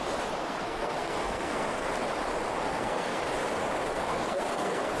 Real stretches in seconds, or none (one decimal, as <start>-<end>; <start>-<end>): 0.0-0.4; 1.9-2.7; 3.2-3.9